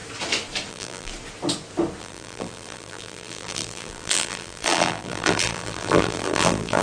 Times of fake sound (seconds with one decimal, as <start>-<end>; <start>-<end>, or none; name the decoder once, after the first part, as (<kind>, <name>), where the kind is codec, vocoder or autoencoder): 0.7-1.1 (vocoder, BigVGAN v2); 2.0-6.8